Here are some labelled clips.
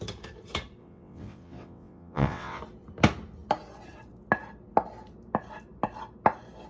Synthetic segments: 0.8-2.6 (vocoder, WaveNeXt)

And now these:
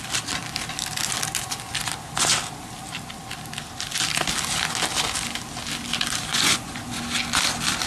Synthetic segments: 6.3-7.0 (vocoder, Vocos)

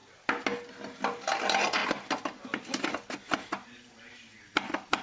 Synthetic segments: none

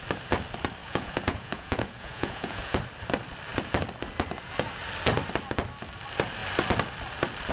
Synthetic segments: 0.8-2.8 (vocoder, Vocos)